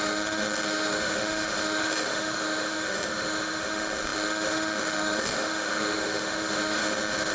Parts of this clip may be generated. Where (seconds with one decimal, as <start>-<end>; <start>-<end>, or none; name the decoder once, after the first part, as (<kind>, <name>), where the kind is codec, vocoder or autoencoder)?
0.0-7.3 (autoencoder, DAC-VAE)